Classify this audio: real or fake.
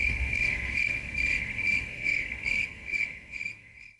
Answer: fake